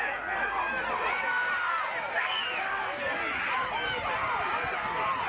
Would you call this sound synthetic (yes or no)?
no